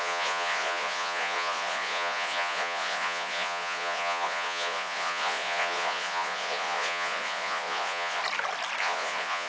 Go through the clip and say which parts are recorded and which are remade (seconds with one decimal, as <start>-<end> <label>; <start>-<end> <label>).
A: 0.0-8.2 remade; 8.2-8.8 recorded; 8.8-9.5 remade